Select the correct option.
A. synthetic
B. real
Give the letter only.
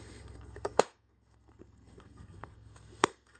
A